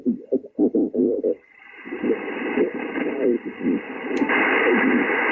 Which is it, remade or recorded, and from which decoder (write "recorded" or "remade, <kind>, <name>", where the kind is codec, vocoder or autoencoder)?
remade, vocoder, BigVGAN v2